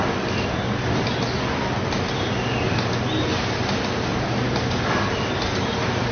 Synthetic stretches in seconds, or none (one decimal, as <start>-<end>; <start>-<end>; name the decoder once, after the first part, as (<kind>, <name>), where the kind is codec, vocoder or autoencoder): 4.1-5.0 (vocoder, BigVGAN v2)

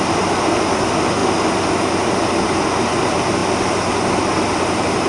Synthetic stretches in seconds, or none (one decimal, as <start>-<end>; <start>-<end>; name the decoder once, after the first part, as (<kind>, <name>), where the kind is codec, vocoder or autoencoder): 0.0-1.2 (vocoder, BigVGAN v2); 3.0-5.1

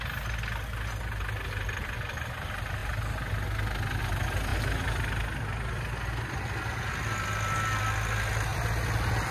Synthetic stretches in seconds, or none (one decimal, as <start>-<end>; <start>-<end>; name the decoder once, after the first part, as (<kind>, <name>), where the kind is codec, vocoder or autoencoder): 8.5-9.3 (vocoder, BigVGAN v2)

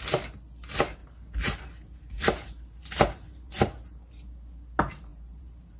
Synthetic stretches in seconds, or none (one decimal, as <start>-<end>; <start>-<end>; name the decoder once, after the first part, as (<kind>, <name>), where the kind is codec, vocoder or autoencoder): 1.0-3.5 (vocoder, BigVGAN v2); 5.1-5.8

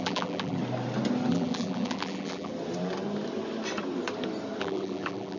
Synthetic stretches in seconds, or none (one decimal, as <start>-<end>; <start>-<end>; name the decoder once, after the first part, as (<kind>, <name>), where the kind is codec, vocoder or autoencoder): 0.0-0.6 (vocoder, BigVGAN v2); 1.3-2.5; 4.6-5.4

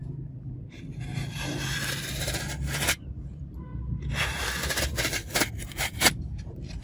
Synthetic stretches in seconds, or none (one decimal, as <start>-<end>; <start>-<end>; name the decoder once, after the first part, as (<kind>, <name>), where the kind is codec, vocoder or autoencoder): 0.0-1.1 (vocoder, BigVGAN v2); 2.2-3.7; 5.5-6.8